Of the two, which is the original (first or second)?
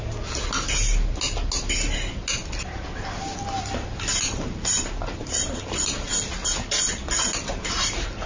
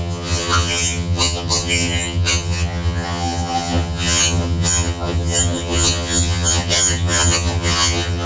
first